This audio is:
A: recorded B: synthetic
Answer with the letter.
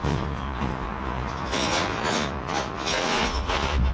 B